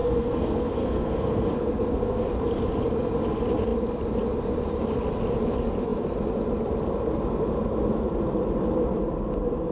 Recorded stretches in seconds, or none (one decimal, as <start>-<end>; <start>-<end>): 2.3-9.7